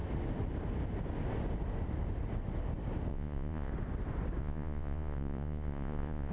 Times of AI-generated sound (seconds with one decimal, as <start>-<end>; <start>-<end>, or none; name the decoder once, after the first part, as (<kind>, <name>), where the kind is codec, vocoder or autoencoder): 3.1-3.7 (vocoder, Vocos); 4.4-6.3